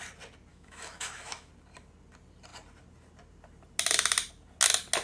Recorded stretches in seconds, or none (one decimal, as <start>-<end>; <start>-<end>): 0.0-0.5; 1.5-5.0